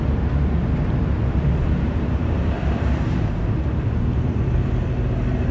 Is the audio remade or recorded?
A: remade